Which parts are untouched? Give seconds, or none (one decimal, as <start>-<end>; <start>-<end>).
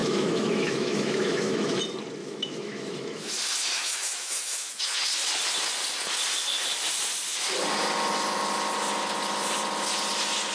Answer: 1.8-2.2; 3.3-3.7; 5.0-10.5